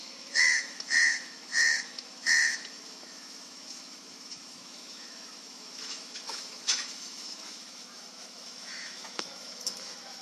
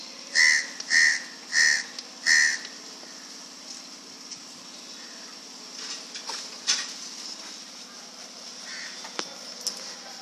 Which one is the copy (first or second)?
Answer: first